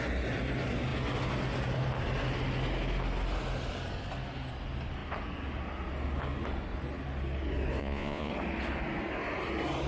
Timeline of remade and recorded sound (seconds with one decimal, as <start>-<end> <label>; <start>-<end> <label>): 0.0-7.8 recorded; 7.8-8.3 remade; 8.3-9.9 recorded